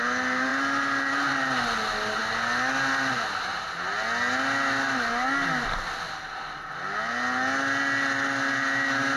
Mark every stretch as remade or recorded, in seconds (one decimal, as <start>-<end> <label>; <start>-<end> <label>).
0.0-9.2 recorded